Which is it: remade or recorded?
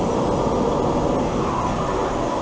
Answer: recorded